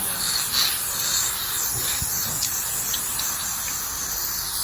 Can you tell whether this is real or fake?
real